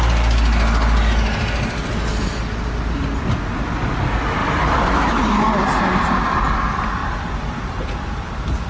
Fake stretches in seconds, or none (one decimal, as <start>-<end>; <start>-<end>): 4.4-5.2; 7.0-8.7